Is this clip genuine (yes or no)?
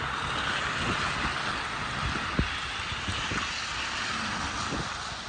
yes